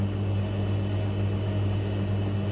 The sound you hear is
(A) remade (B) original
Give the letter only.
B